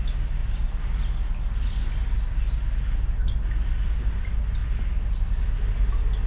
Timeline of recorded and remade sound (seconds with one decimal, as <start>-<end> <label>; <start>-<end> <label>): 0.0-6.3 recorded